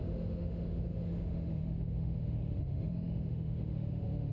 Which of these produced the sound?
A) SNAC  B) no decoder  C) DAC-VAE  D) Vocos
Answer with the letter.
C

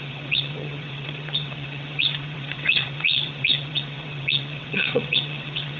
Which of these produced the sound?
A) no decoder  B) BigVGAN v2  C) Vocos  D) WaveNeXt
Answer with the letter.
D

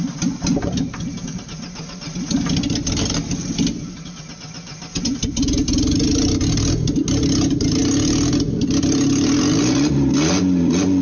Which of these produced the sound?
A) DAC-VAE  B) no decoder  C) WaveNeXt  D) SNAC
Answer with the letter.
B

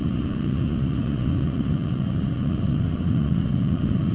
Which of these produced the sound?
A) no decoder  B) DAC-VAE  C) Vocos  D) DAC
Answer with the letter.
C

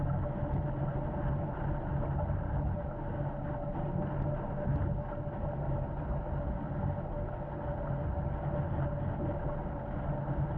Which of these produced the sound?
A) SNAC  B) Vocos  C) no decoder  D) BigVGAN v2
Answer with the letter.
C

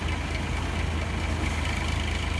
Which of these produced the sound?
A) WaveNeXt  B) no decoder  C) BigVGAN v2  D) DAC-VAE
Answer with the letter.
B